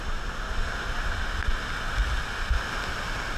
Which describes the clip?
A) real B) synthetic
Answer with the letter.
A